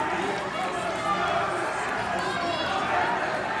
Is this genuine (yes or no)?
yes